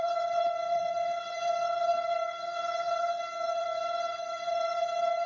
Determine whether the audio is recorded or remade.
remade